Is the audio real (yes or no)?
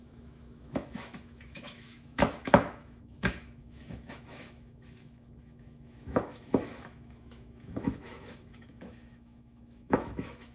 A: no